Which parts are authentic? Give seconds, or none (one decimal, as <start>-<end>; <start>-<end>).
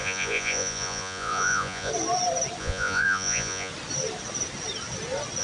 1.9-2.6; 3.7-5.4